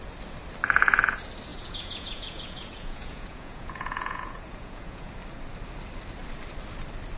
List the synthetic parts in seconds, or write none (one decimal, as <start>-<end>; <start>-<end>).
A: 1.5-5.1